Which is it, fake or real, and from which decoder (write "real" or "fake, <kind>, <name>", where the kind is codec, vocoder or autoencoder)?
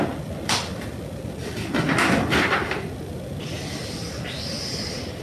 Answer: real